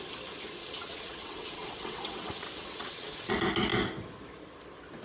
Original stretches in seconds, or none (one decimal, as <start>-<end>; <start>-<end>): 0.0-0.6; 3.3-5.0